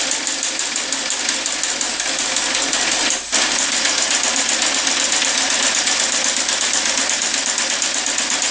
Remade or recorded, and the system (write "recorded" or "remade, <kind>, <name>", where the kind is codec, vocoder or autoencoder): recorded